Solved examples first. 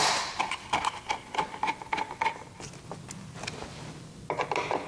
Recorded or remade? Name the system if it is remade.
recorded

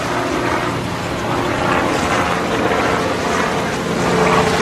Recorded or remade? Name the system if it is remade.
recorded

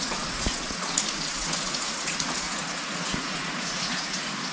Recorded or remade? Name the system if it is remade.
remade, vocoder, Vocos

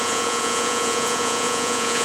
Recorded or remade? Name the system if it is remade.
remade, vocoder, Vocos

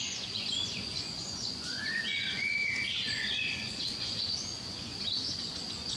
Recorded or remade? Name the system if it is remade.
remade, vocoder, Vocos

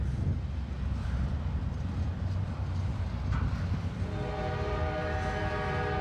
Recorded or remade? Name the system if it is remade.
recorded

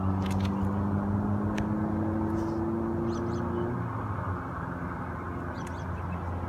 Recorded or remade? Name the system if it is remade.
recorded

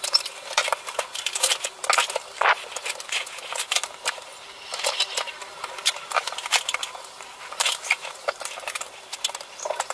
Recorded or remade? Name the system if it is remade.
recorded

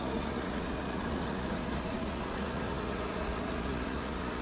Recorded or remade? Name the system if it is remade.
remade, vocoder, Vocos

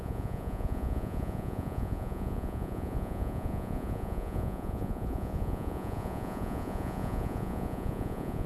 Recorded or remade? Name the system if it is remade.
remade, vocoder, Vocos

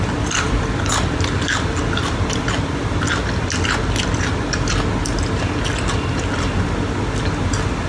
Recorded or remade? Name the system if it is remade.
recorded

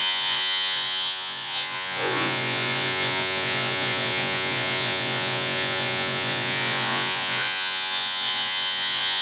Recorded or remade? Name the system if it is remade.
remade, vocoder, Vocos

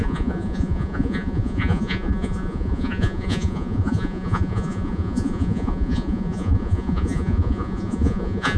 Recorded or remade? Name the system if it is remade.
remade, vocoder, Vocos